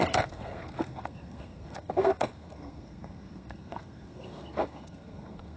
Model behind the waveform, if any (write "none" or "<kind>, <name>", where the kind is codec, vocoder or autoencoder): codec, SNAC